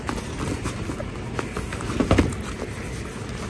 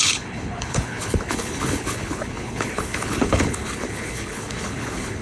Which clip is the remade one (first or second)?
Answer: second